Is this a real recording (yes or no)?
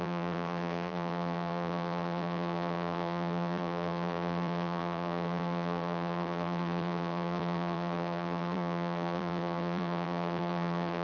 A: no